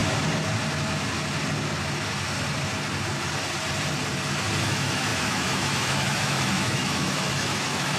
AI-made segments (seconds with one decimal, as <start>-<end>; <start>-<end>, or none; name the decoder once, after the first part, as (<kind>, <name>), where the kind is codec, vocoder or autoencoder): 4.6-8.0 (autoencoder, DAC-VAE)